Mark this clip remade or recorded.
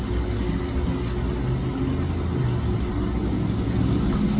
recorded